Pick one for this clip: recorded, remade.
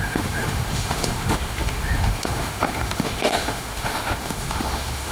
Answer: remade